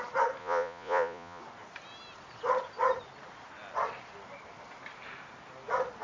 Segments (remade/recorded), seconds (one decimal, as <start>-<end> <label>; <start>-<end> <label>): 0.0-0.4 recorded; 0.4-1.4 remade; 1.4-6.0 recorded